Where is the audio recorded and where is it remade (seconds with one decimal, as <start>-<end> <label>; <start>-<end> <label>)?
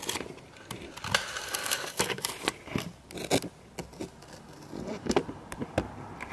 0.0-1.6 recorded; 1.6-2.2 remade; 2.2-6.3 recorded